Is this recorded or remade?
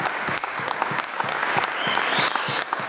remade